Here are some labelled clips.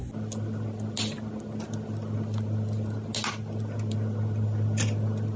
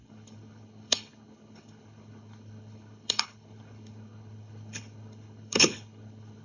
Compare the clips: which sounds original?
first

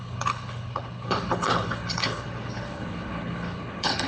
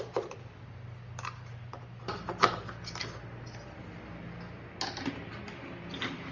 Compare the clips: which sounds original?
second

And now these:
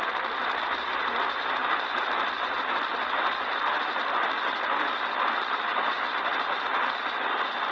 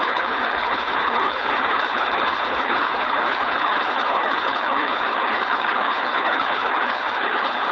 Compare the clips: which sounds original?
first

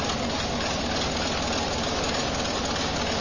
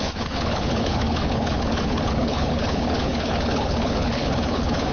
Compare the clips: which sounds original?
first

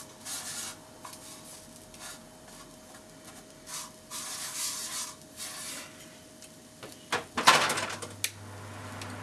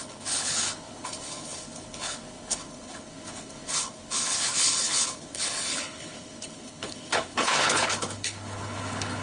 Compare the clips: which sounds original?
first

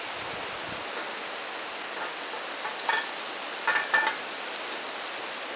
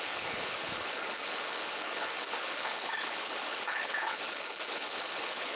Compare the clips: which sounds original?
first